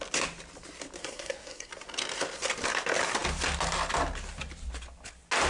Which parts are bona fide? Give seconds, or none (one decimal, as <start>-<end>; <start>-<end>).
0.0-1.0; 1.7-5.5

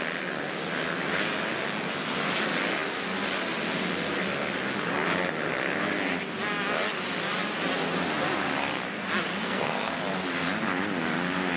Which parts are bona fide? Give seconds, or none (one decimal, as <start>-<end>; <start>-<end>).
0.0-9.3; 10.0-11.6

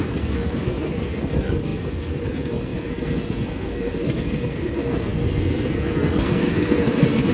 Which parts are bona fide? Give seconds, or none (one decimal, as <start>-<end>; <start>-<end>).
none

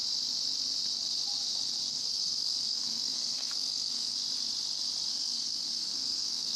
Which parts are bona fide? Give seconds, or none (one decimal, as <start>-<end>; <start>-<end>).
0.0-1.9; 4.1-5.1

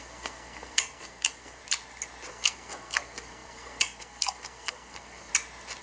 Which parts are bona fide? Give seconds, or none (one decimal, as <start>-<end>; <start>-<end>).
1.6-2.3; 5.3-5.8

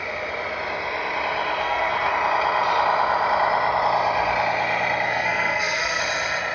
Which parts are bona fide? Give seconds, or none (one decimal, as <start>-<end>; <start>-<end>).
0.0-1.6; 2.1-5.1; 6.0-6.5

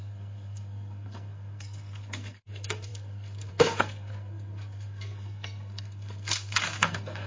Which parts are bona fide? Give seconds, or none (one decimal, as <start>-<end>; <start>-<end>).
none

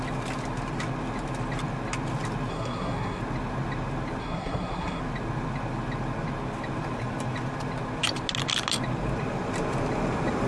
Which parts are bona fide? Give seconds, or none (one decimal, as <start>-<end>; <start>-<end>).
0.0-2.5; 3.2-4.2; 5.0-10.5